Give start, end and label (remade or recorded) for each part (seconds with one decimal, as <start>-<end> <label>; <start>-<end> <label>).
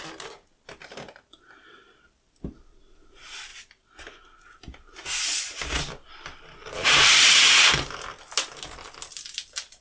0.0-6.6 recorded; 6.6-7.4 remade; 7.4-9.8 recorded